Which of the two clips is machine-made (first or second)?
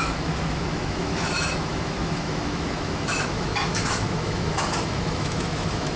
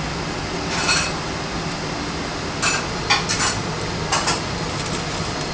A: first